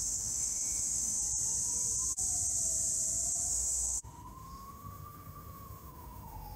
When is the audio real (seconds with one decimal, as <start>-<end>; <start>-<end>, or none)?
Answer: 1.2-3.5